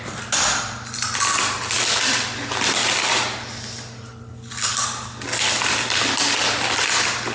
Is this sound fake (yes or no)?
no